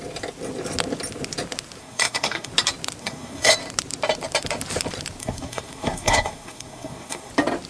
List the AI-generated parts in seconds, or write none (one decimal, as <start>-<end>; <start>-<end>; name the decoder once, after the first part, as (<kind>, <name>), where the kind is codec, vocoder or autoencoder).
1.8-2.5 (codec, SNAC); 3.0-3.5; 5.2-7.3